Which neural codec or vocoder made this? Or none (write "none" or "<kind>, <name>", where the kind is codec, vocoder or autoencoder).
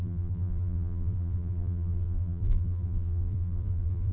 vocoder, BigVGAN v2